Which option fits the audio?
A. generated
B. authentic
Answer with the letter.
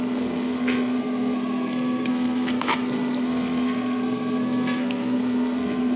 A